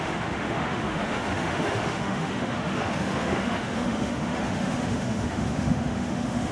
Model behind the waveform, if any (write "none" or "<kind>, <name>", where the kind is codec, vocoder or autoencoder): autoencoder, DAC-VAE